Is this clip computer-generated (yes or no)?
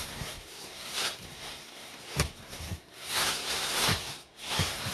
yes